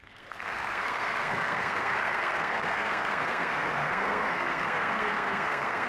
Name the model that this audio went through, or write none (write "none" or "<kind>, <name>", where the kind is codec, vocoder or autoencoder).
codec, SNAC